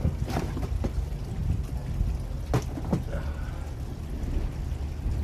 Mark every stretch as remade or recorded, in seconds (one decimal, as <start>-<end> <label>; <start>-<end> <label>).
0.0-5.2 recorded